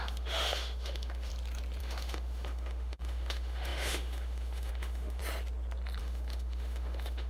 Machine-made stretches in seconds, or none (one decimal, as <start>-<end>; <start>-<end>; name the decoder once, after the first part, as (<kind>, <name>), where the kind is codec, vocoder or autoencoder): 0.0-1.3 (autoencoder, DAC-VAE); 1.8-5.2; 6.0-7.3